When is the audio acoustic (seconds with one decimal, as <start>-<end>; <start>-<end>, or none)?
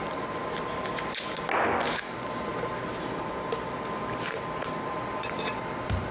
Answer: 0.0-6.1